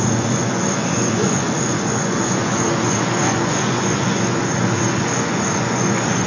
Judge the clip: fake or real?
fake